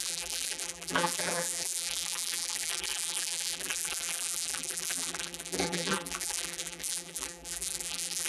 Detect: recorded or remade remade